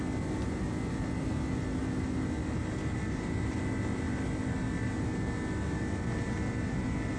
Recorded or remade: recorded